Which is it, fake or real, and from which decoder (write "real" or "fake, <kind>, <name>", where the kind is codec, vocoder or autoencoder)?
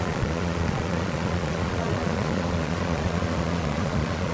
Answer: fake, vocoder, Vocos